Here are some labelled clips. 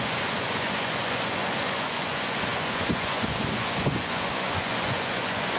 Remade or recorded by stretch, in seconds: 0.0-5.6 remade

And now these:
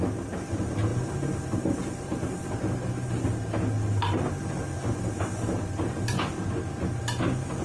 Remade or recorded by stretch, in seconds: 0.0-7.6 recorded

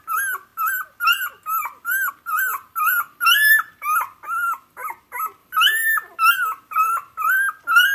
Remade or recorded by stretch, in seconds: 0.0-2.5 recorded; 2.5-3.5 remade; 3.5-5.4 recorded; 5.4-6.1 remade; 6.1-7.9 recorded

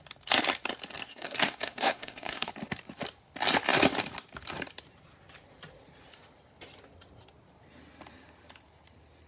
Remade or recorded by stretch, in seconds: 0.0-1.1 recorded; 1.1-2.5 remade; 2.5-9.3 recorded

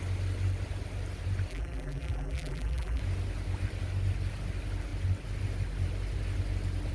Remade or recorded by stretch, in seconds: 0.0-1.5 recorded; 1.5-3.0 remade; 3.0-6.9 recorded

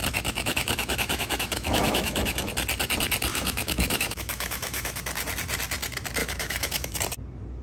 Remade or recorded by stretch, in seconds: 0.0-2.5 remade; 2.5-3.3 recorded; 3.3-5.0 remade; 5.0-6.2 recorded; 6.2-7.0 remade; 7.0-7.6 recorded